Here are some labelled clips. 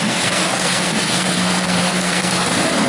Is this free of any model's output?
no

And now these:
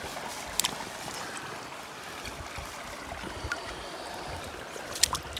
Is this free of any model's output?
yes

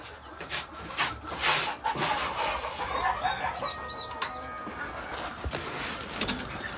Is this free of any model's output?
yes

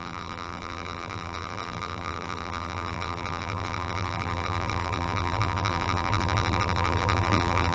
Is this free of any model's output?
no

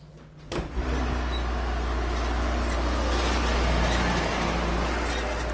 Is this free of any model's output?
yes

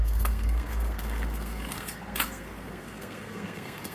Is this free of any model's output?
no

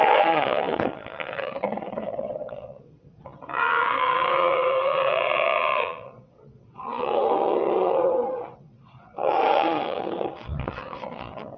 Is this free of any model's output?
no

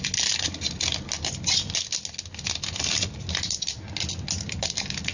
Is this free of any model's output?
yes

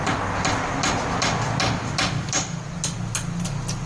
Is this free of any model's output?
yes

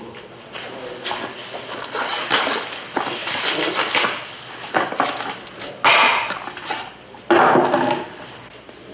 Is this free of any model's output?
yes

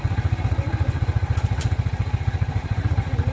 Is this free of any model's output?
yes